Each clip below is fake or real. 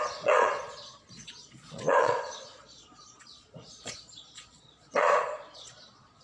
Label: fake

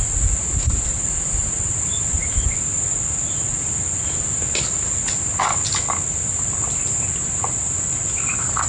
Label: real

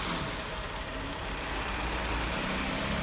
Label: real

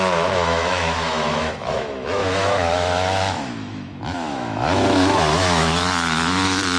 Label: fake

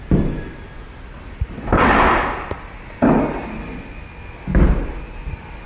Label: real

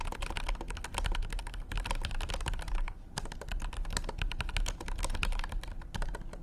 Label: real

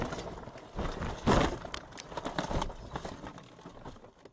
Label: real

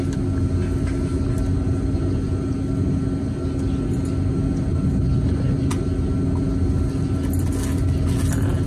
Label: real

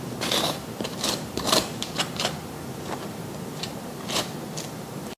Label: fake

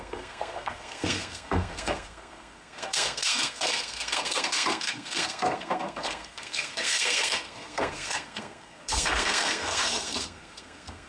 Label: fake